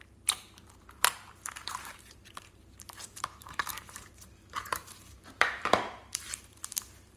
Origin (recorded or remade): remade